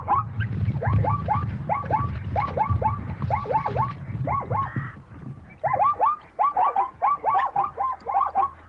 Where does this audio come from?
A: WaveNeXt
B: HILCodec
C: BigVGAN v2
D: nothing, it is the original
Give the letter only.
C